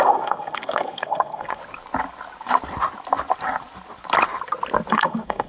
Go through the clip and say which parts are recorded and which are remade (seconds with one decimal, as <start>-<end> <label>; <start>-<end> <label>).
0.0-1.6 remade; 1.6-4.9 recorded; 4.9-5.5 remade